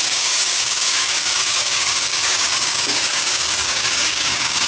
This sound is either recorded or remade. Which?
remade